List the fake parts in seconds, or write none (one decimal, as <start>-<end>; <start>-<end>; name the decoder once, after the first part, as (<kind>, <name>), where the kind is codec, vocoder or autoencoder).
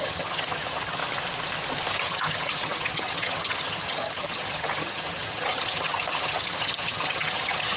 0.0-1.0 (vocoder, HiFi-GAN); 1.9-7.8